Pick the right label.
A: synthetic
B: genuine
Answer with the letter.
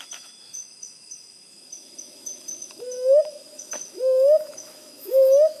A